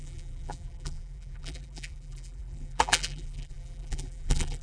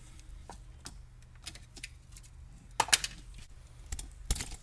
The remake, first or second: first